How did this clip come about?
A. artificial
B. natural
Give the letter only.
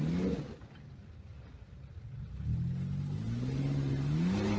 B